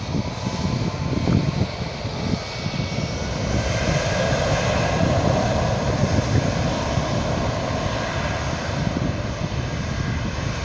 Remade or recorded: recorded